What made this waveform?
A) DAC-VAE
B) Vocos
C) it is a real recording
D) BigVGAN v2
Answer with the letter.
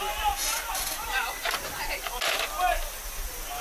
C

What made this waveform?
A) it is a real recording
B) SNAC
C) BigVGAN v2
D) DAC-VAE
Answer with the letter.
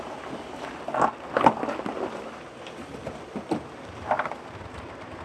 A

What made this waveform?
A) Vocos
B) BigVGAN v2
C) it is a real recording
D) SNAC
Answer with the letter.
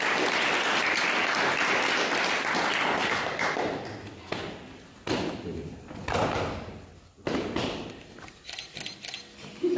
C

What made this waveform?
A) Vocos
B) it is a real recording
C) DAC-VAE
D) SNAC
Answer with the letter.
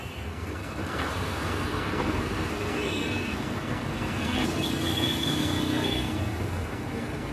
D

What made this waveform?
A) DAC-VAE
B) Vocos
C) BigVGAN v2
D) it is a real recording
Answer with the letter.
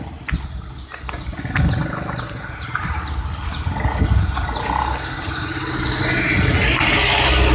D